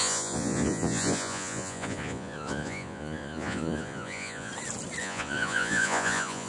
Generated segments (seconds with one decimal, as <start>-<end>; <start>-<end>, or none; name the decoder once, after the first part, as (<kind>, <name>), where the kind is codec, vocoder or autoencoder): 0.0-4.5 (vocoder, Vocos); 5.0-6.5